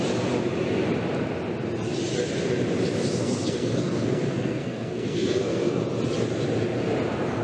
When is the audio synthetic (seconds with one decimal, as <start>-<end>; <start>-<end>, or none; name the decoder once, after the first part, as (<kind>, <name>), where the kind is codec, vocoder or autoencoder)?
3.2-5.8 (codec, SNAC)